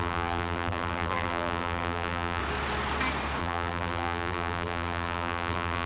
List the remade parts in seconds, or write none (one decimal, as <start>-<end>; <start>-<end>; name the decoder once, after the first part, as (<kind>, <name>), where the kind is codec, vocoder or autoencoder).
0.0-2.4 (vocoder, BigVGAN v2); 3.4-5.9